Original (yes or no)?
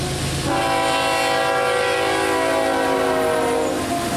yes